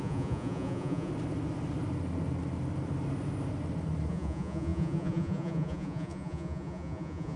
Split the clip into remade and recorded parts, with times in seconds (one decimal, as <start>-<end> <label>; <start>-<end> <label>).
0.0-1.1 remade; 1.1-4.1 recorded; 4.1-7.4 remade